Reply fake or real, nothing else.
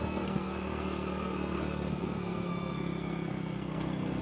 fake